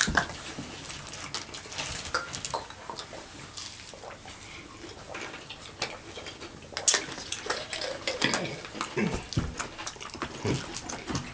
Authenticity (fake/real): real